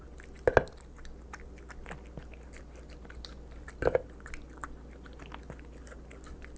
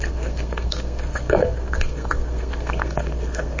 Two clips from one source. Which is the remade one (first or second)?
second